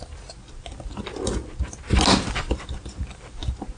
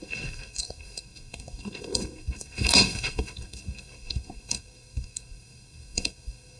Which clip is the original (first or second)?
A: first